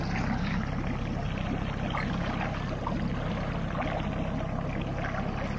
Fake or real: real